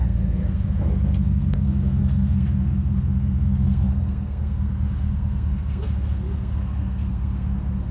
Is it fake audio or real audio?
fake